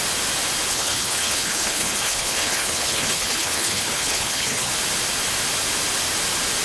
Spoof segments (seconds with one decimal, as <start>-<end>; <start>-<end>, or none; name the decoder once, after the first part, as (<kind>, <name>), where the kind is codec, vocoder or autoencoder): 0.7-4.7 (codec, HILCodec)